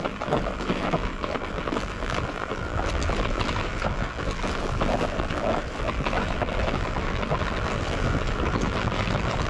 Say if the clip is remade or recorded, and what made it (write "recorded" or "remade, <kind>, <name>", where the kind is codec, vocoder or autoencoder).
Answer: remade, vocoder, BigVGAN v2